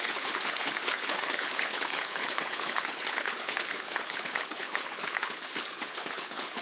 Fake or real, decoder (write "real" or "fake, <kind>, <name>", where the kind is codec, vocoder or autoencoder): fake, codec, HILCodec